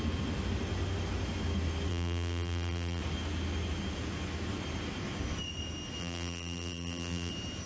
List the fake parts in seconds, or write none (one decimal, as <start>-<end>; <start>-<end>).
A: 1.9-3.0; 6.0-7.3